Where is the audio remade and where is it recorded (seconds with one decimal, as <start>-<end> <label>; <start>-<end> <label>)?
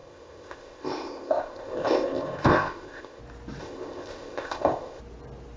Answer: 0.0-3.2 remade; 3.2-3.6 recorded; 3.6-5.0 remade; 5.0-5.6 recorded